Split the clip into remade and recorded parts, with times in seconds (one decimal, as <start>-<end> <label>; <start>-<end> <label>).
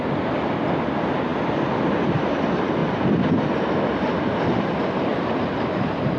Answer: 0.0-6.2 recorded